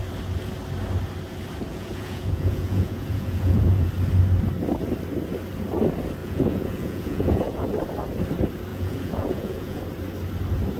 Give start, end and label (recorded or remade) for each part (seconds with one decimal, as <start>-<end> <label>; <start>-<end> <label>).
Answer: 0.0-1.7 recorded; 1.7-3.9 remade; 3.9-6.2 recorded; 6.2-7.7 remade; 7.7-8.7 recorded; 8.7-9.8 remade; 9.8-10.8 recorded